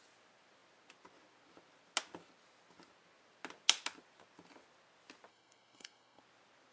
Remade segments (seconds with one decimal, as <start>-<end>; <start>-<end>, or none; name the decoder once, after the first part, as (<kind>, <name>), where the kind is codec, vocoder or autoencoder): 5.3-6.2 (codec, SNAC)